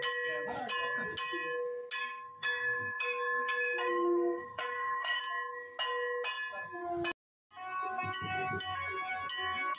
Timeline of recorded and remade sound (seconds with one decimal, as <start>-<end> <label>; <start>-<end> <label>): 0.0-2.0 recorded; 2.0-5.2 remade; 5.2-9.8 recorded